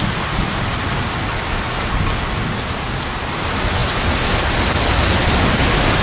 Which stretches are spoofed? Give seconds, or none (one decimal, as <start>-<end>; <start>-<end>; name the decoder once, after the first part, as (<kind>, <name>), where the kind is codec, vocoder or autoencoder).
none